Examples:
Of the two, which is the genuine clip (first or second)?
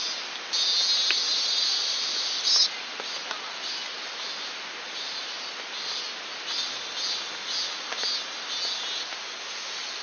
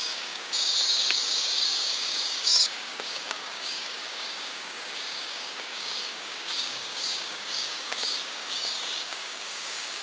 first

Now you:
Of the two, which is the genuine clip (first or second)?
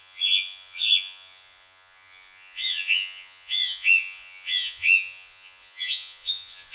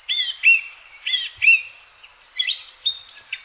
second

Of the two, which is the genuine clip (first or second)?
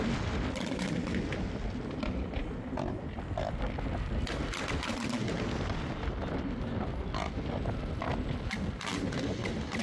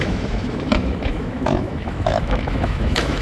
first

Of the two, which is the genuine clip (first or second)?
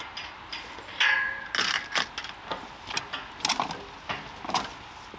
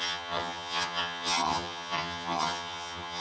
first